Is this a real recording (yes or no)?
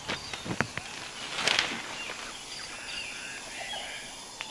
yes